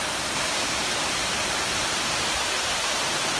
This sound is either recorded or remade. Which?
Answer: recorded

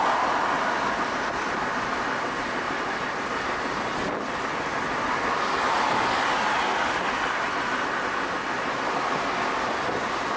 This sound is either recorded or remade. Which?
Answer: recorded